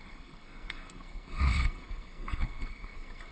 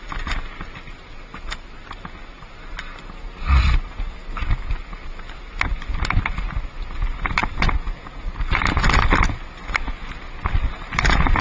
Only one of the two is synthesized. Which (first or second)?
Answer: first